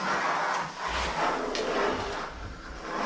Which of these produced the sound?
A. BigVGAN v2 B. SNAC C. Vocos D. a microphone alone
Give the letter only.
D